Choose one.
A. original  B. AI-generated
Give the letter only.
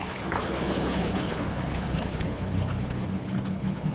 B